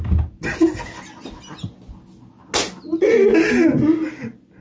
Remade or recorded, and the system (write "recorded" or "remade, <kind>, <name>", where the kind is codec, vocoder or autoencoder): recorded